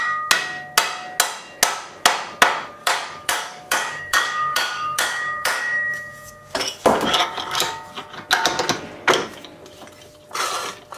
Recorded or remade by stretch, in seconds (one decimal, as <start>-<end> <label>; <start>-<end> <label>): 0.0-2.8 recorded; 2.8-7.9 remade; 7.9-11.0 recorded